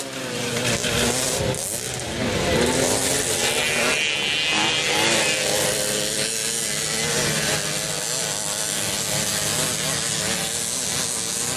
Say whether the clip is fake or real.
real